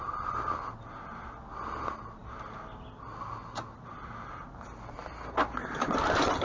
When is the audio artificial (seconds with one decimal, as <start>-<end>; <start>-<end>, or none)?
none